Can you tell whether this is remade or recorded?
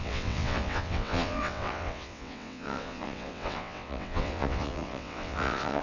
remade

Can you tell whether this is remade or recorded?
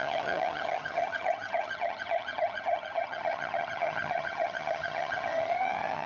remade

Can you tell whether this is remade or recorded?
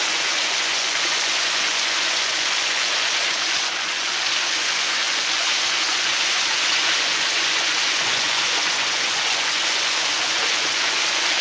remade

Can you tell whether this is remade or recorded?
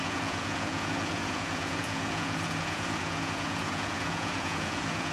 remade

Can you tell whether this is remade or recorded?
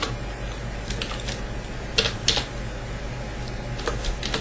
recorded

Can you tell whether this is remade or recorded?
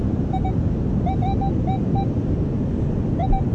recorded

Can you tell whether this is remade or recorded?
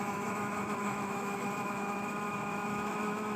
remade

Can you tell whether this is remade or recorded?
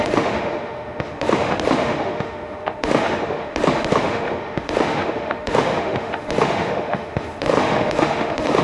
remade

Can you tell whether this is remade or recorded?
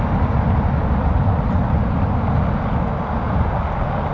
recorded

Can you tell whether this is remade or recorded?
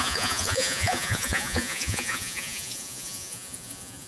remade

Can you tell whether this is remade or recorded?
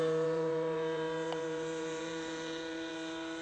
remade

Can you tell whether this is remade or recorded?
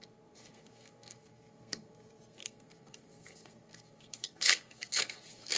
remade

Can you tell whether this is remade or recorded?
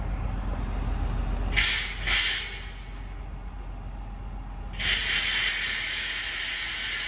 recorded